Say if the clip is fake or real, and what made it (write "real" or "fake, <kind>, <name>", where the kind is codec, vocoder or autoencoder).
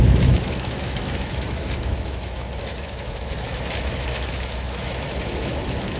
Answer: fake, autoencoder, DAC-VAE